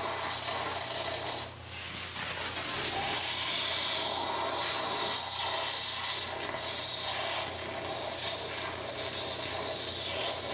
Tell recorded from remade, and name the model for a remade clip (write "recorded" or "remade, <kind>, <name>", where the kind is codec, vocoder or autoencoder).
recorded